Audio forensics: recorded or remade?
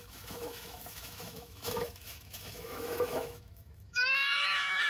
remade